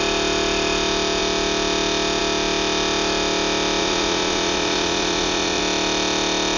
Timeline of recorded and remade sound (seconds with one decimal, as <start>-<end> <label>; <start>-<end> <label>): 0.0-3.8 recorded; 3.8-5.6 remade; 5.6-6.6 recorded